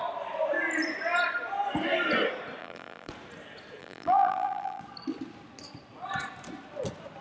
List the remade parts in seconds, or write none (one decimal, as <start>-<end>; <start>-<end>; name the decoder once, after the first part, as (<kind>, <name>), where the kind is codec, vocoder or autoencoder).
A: 2.6-3.1 (vocoder, BigVGAN v2); 3.8-4.8